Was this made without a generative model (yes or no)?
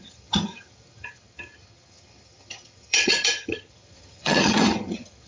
no